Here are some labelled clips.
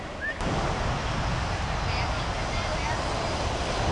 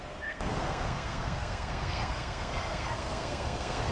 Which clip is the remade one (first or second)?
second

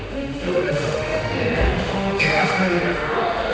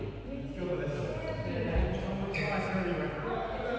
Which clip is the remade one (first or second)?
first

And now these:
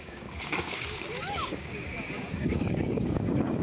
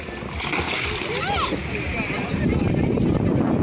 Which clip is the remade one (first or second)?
first